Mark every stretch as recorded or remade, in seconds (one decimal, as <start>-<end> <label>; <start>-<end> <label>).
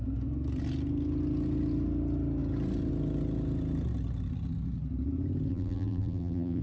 0.0-5.5 recorded; 5.5-6.6 remade